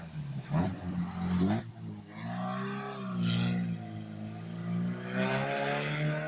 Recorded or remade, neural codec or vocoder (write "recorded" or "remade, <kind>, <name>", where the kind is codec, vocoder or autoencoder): recorded